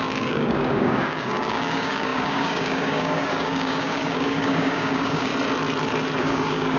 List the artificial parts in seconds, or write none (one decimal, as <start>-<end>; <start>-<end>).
0.0-5.3; 6.2-6.8